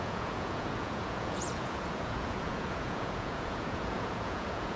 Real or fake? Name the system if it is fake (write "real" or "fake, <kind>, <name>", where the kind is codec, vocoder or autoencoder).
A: fake, vocoder, Vocos